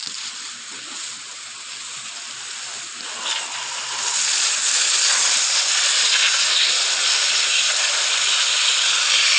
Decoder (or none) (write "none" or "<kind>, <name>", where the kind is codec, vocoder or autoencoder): none